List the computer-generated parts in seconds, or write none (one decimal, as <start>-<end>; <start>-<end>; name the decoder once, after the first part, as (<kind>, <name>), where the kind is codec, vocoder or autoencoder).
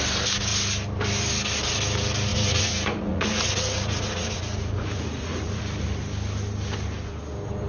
2.3-5.6 (vocoder, Vocos)